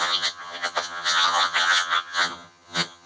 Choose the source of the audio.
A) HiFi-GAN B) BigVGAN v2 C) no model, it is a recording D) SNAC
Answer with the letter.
A